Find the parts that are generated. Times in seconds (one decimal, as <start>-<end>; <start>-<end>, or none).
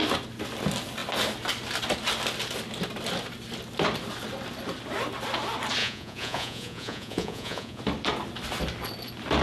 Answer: 5.8-7.8